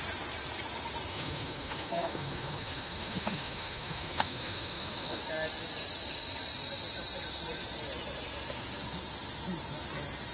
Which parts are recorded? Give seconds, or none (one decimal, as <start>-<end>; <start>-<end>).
0.0-1.1; 5.2-10.3